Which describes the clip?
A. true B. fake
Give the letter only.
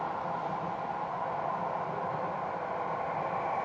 A